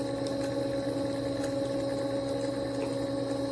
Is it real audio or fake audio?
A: real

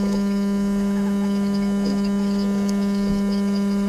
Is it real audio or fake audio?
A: fake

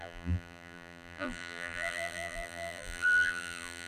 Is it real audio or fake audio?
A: fake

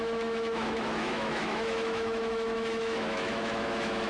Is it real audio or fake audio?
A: fake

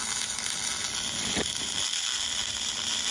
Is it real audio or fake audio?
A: real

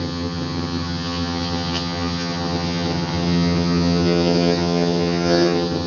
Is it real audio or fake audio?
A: fake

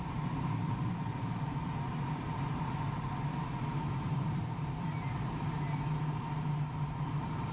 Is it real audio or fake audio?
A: fake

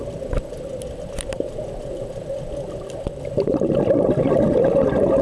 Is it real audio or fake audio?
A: real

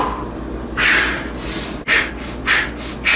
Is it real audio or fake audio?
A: real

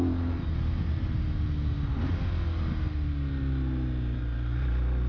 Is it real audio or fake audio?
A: real